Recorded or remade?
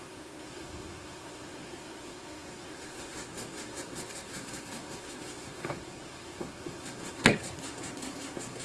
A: remade